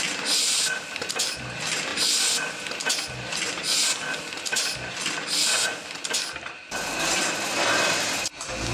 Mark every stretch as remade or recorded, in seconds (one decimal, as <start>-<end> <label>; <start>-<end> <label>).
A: 0.0-8.7 recorded